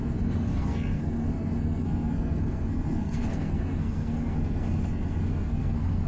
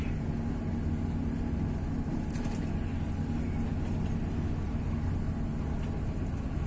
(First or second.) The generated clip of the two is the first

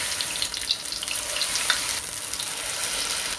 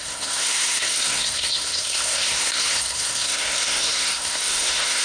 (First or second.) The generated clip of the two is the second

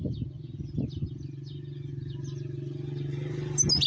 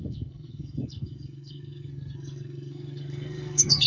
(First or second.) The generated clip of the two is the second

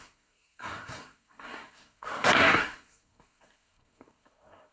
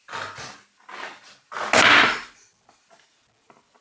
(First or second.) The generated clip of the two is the first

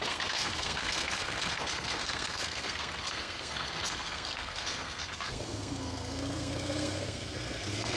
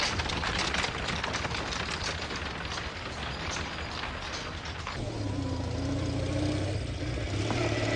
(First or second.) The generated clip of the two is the first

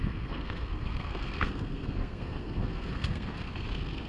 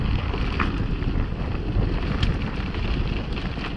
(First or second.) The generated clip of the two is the first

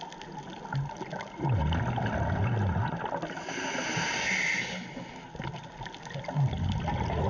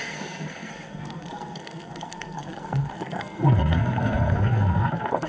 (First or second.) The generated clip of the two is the second